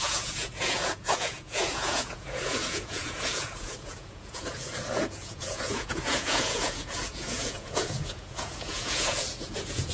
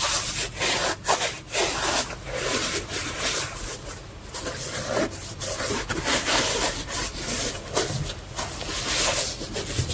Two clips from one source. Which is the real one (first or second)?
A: second